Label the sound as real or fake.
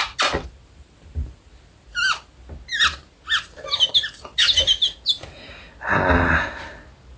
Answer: real